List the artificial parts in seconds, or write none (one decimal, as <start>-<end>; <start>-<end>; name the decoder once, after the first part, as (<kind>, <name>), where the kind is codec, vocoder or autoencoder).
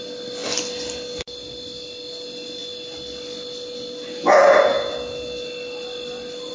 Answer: none